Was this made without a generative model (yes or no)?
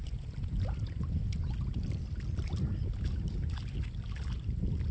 yes